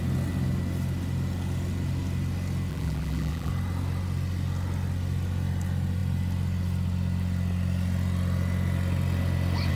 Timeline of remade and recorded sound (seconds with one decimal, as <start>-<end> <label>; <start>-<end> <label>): 0.0-2.7 recorded; 2.7-3.5 remade; 3.5-9.7 recorded